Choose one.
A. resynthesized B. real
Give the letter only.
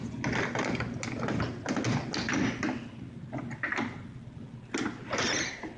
B